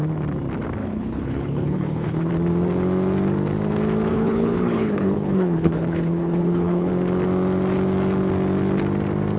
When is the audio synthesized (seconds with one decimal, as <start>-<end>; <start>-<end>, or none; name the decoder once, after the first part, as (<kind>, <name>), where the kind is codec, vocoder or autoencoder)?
0.8-2.3 (codec, HILCodec); 4.1-6.9